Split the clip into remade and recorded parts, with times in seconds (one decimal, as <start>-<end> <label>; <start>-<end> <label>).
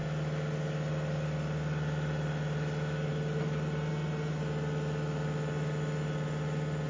0.0-6.9 recorded